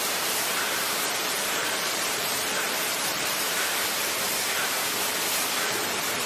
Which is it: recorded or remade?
remade